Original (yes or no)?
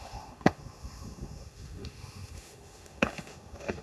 no